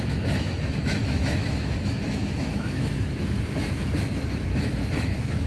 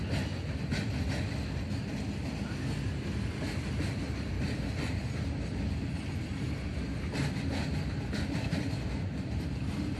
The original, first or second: second